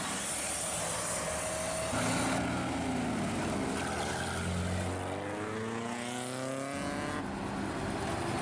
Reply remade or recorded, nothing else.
recorded